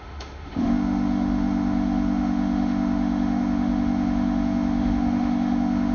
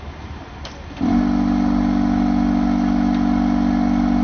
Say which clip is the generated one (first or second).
first